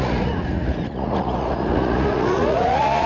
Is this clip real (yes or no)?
no